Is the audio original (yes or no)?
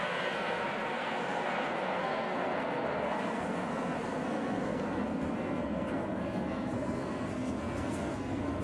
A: no